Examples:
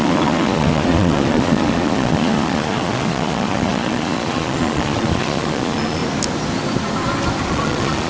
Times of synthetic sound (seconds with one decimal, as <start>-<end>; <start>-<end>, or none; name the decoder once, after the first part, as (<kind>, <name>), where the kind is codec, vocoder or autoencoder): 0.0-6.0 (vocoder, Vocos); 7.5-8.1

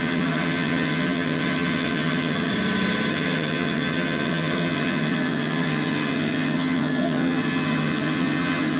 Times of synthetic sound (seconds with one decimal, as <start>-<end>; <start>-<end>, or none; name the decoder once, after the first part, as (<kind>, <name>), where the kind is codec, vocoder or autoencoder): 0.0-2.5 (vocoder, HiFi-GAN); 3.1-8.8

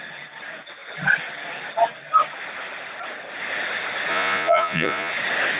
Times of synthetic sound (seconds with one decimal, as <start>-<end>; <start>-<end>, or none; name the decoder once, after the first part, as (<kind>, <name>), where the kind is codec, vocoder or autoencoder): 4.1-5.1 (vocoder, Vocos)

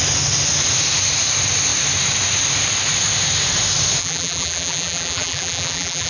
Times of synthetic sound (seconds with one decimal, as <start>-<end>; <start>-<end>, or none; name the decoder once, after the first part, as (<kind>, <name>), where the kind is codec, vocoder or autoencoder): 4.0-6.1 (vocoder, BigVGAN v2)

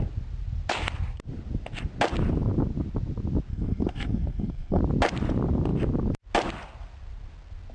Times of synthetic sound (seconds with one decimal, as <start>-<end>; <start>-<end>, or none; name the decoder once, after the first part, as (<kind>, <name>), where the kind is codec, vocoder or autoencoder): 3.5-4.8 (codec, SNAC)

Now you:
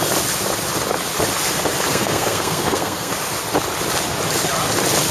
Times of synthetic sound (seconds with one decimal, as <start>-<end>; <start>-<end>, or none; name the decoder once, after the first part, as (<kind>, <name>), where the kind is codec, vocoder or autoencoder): 1.9-3.1 (codec, SNAC)